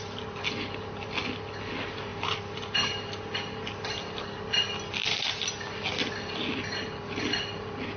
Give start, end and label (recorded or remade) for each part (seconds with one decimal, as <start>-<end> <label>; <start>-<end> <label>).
0.0-8.0 recorded